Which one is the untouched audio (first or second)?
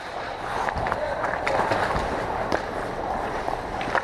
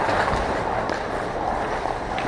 second